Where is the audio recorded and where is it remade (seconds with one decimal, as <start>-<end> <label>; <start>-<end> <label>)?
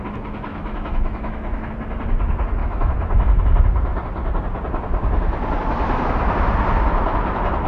0.0-0.5 recorded; 0.5-1.7 remade; 1.7-2.6 recorded; 2.6-3.4 remade; 3.4-7.7 recorded